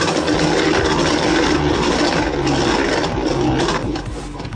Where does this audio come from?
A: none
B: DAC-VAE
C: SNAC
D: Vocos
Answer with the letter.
A